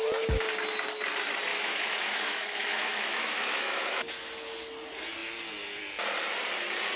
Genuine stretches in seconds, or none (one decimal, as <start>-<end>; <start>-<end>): 0.0-1.5; 4.0-7.0